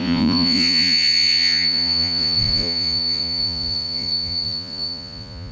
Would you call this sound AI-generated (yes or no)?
yes